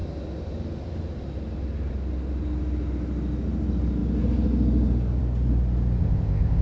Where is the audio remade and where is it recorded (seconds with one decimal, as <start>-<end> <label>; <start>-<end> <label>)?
0.0-6.0 recorded; 6.0-6.6 remade